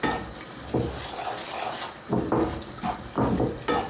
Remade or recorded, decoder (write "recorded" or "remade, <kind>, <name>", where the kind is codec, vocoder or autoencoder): recorded